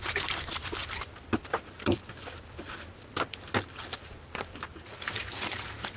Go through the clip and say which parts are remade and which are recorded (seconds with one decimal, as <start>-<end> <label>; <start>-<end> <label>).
0.0-0.8 recorded; 0.8-2.4 remade; 2.4-4.0 recorded; 4.0-6.0 remade